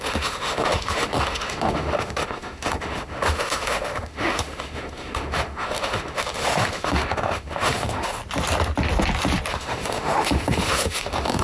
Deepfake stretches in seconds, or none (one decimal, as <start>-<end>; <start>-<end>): 0.0-8.2; 9.5-11.4